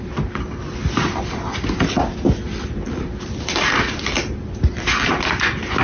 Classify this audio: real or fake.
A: real